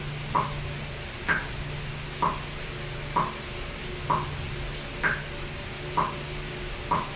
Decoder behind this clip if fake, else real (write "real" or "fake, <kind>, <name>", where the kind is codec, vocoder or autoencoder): real